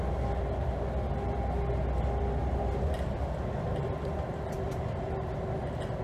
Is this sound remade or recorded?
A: recorded